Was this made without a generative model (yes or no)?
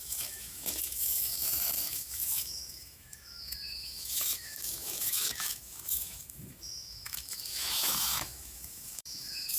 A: no